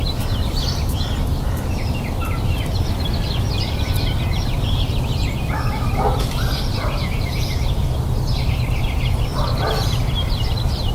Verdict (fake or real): fake